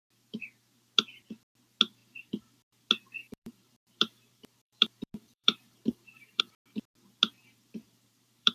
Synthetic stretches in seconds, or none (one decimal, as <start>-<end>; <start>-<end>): 2.0-2.8; 3.2-6.4; 7.4-8.5